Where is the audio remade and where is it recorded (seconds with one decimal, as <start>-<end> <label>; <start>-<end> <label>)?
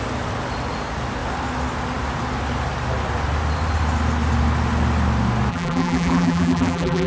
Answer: 0.0-5.5 recorded; 5.5-7.1 remade